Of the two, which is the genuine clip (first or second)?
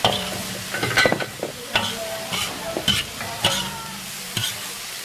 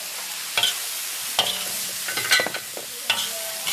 second